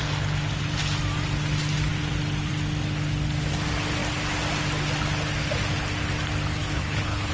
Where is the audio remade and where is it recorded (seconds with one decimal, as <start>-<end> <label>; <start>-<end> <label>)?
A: 0.0-6.6 recorded; 6.6-7.3 remade